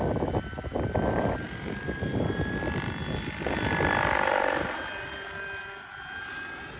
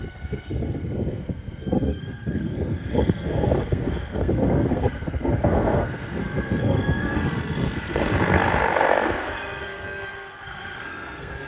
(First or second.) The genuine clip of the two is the first